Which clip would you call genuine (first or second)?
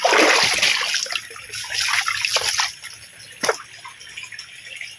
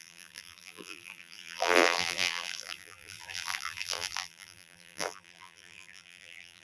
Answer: first